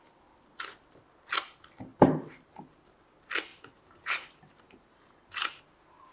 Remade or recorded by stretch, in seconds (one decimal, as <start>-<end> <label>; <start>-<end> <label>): 0.0-1.9 recorded; 1.9-2.6 remade; 2.6-3.5 recorded; 3.5-5.6 remade; 5.6-6.1 recorded